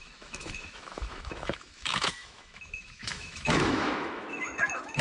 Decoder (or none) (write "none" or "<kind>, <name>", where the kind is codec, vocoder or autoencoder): autoencoder, DAC-VAE